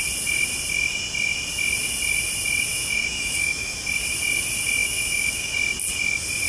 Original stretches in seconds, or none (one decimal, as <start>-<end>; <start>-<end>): 0.0-2.7; 3.8-4.8; 5.5-6.5